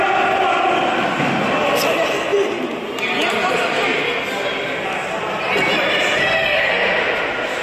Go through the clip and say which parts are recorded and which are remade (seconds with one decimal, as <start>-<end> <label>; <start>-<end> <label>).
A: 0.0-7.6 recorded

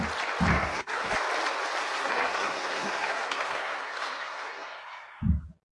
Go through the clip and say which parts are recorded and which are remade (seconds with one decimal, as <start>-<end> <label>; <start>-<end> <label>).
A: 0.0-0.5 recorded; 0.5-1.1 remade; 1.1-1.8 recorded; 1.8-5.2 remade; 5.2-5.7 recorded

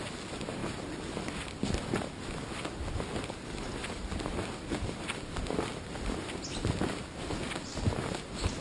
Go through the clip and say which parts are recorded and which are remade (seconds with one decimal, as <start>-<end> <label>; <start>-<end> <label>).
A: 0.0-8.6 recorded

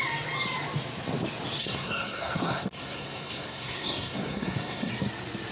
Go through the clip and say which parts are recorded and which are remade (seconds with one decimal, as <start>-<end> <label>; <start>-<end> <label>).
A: 0.0-1.6 recorded; 1.6-4.9 remade; 4.9-5.5 recorded

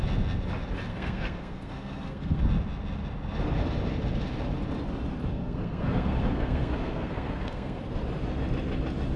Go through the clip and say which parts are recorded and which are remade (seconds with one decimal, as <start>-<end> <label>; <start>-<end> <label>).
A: 0.0-0.9 recorded; 0.9-2.4 remade; 2.4-5.3 recorded; 5.3-7.8 remade; 7.8-9.2 recorded